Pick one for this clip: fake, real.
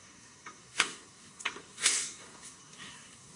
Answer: fake